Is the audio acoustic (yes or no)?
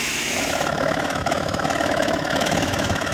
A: no